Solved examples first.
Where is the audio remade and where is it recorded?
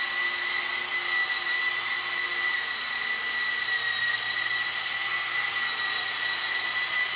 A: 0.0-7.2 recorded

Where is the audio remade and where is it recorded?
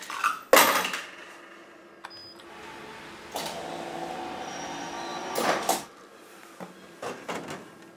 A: 0.0-8.0 recorded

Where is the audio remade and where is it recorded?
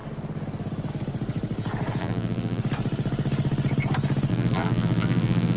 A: 0.0-2.0 recorded; 2.0-2.6 remade; 2.6-4.3 recorded; 4.3-5.6 remade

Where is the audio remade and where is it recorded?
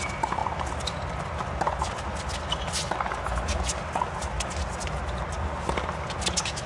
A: 0.0-6.7 recorded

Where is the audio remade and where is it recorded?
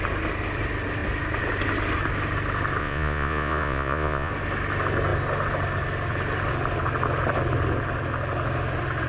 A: 0.0-2.8 recorded; 2.8-4.3 remade; 4.3-9.1 recorded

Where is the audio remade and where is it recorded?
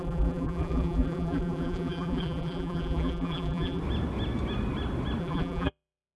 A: 0.0-3.8 remade; 3.8-5.2 recorded; 5.2-6.2 remade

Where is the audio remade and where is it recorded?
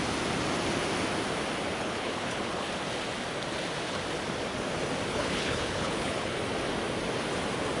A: 0.0-1.8 recorded; 1.8-2.7 remade; 2.7-5.1 recorded; 5.1-6.4 remade; 6.4-7.8 recorded